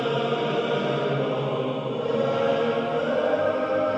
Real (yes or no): yes